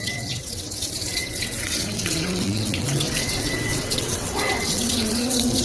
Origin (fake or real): fake